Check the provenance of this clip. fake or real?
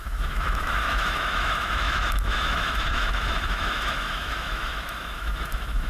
fake